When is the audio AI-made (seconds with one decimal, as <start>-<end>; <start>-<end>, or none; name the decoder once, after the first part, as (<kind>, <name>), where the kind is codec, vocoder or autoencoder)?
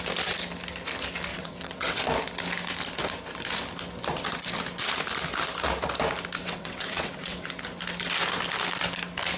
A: 1.3-2.0 (vocoder, WaveNeXt); 6.4-7.5